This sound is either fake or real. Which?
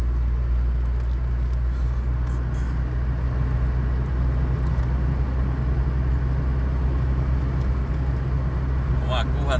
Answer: real